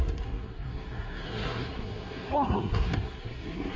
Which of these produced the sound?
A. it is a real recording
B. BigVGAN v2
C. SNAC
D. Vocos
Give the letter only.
C